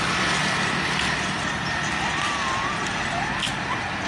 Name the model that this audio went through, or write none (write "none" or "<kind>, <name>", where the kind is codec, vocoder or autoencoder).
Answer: none